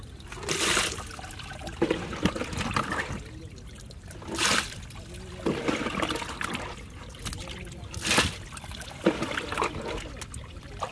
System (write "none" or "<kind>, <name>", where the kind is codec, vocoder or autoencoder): none